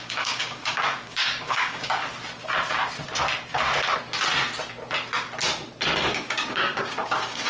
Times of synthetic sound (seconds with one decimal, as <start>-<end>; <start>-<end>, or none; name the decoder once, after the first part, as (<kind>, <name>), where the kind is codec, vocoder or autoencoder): 0.0-2.1 (codec, DAC); 6.1-7.5